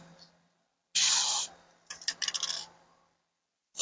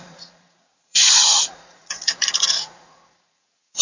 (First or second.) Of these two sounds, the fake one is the second